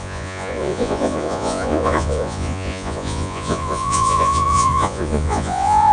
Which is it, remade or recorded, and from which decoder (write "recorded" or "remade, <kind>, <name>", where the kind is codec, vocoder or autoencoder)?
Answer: remade, vocoder, Vocos